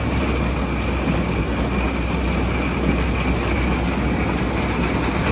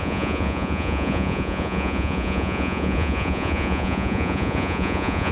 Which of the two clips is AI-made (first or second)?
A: second